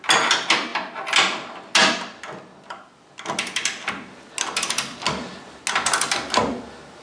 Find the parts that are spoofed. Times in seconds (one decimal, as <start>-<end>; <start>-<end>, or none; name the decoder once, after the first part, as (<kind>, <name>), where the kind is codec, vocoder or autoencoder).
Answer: none